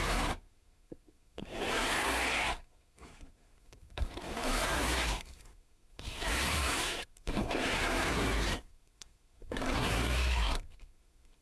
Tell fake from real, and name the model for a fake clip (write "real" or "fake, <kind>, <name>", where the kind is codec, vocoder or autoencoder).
fake, codec, SNAC